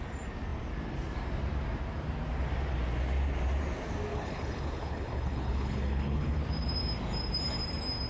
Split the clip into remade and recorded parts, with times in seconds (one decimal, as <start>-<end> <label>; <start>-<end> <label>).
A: 0.0-4.1 recorded; 4.1-6.4 remade; 6.4-8.1 recorded